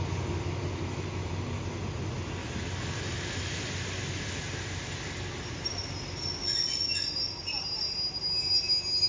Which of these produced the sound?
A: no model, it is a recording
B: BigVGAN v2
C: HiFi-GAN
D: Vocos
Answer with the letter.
A